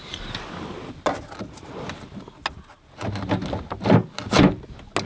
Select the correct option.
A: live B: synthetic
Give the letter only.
A